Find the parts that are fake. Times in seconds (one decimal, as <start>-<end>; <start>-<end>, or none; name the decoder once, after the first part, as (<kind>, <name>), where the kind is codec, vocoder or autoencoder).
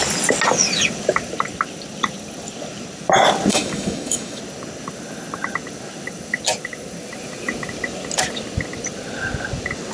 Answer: 3.5-4.4 (codec, DAC)